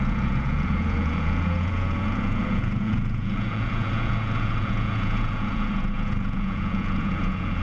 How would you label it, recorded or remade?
remade